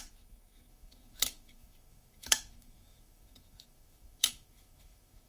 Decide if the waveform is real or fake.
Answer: fake